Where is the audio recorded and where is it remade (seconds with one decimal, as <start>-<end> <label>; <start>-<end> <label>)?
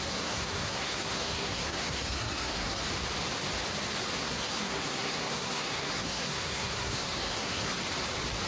0.0-2.8 remade; 2.8-4.2 recorded; 4.2-7.7 remade; 7.7-8.5 recorded